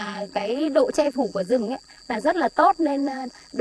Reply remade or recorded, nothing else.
remade